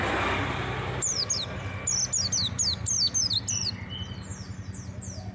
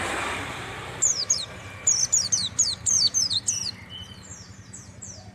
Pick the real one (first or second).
first